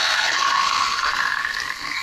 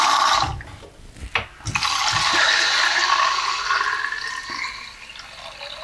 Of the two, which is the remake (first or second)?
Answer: first